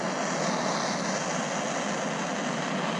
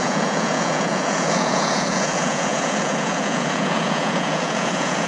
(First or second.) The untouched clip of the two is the first